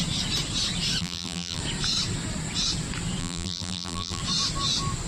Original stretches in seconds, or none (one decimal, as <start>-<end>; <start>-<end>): 0.0-1.0; 1.6-3.2; 4.2-5.1

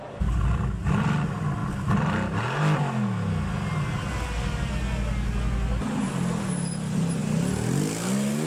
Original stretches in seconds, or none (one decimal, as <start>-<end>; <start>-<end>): 0.0-8.5

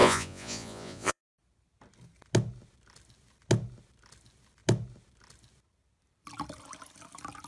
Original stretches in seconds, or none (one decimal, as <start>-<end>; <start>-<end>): 1.2-7.5

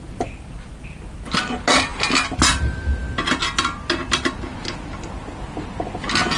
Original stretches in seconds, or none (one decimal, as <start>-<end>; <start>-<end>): 0.0-6.4

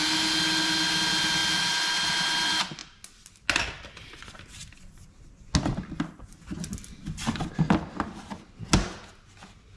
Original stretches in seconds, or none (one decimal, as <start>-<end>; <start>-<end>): 0.0-9.8

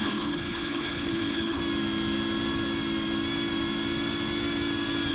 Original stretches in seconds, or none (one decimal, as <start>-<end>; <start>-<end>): 1.6-5.1